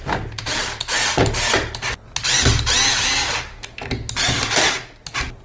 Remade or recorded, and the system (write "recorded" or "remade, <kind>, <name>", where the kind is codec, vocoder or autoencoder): recorded